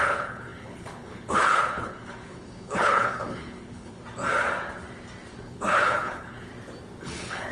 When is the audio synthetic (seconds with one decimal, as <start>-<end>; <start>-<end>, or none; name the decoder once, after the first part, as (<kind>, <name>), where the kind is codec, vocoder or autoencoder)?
0.0-4.0 (codec, HILCodec); 5.4-6.5; 7.0-7.5